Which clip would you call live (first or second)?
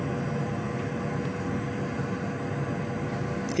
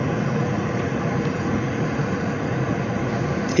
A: first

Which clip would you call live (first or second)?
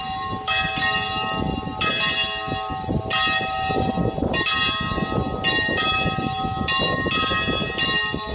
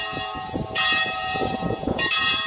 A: first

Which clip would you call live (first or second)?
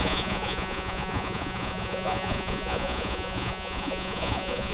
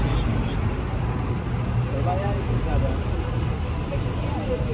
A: second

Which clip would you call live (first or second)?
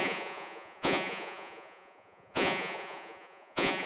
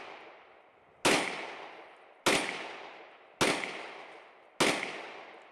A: second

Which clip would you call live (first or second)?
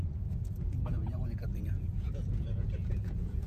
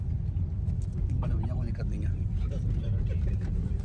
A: second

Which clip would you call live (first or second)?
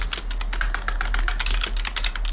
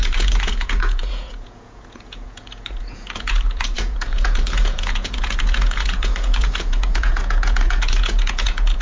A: first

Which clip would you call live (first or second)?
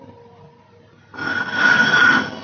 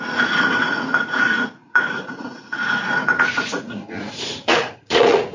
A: first